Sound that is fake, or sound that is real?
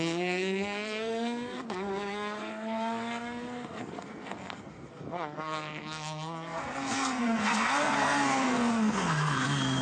fake